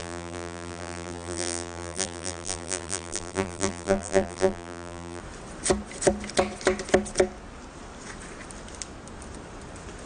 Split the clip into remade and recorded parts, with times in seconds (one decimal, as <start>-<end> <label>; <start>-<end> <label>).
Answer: 0.0-5.2 remade; 5.2-10.1 recorded